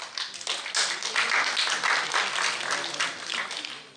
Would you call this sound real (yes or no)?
yes